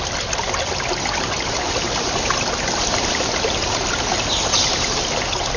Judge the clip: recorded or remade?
recorded